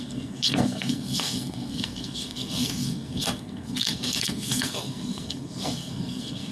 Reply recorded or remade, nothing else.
remade